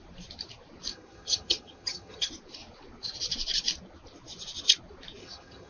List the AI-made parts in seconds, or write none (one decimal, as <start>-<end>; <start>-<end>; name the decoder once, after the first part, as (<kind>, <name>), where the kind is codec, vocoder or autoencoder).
0.9-2.3 (vocoder, HiFi-GAN); 5.2-5.7